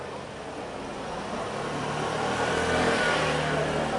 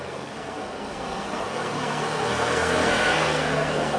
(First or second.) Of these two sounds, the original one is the first